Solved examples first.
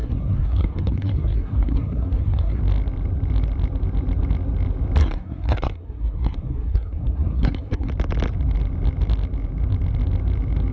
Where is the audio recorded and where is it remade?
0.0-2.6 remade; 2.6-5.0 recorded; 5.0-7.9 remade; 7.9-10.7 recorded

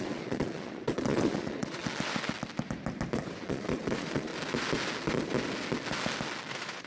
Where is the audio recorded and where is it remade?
0.0-1.8 remade; 1.8-3.4 recorded; 3.4-4.3 remade; 4.3-6.5 recorded; 6.5-6.9 remade

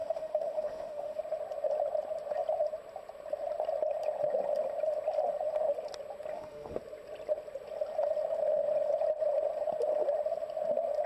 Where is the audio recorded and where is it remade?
0.0-1.2 remade; 1.2-6.3 recorded; 6.3-6.8 remade; 6.8-11.1 recorded